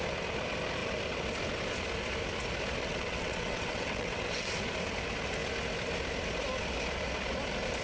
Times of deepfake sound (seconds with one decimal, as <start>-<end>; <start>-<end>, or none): 2.8-4.5